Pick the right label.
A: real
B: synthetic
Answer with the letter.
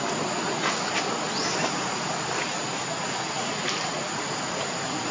A